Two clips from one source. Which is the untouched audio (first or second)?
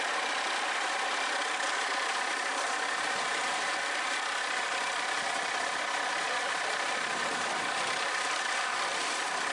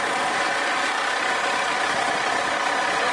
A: second